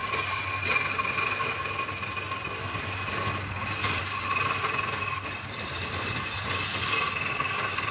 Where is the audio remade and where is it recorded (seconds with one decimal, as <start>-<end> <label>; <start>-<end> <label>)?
0.0-7.9 recorded